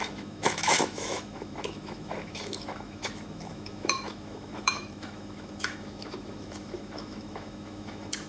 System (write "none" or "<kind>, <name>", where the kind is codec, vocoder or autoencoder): autoencoder, DAC-VAE